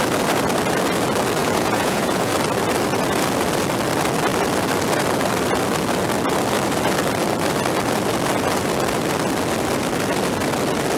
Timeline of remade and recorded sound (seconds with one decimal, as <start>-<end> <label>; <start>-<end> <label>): 0.0-1.4 recorded; 1.4-2.3 remade; 2.3-11.0 recorded